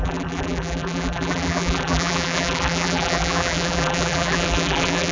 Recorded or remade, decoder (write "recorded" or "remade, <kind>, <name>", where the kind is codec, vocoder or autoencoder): remade, vocoder, BigVGAN v2